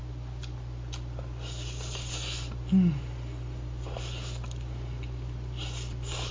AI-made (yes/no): no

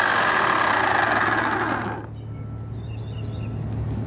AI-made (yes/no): no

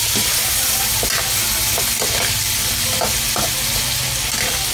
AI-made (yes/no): no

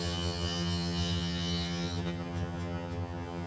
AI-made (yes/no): yes